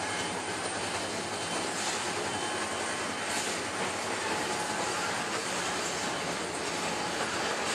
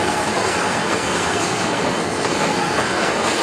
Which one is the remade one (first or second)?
second